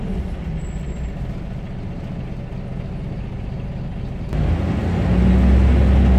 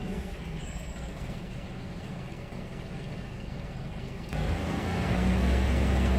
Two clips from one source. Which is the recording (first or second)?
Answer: first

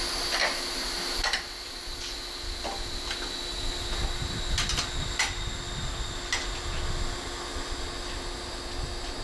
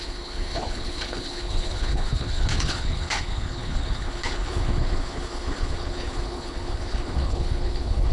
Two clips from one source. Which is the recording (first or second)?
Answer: first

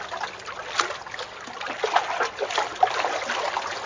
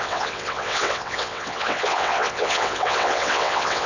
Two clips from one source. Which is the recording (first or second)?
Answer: first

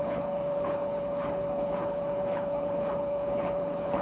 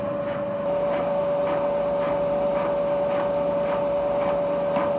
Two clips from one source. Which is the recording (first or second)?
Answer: second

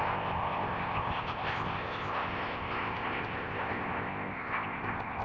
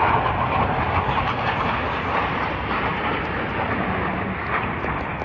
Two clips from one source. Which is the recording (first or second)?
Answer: second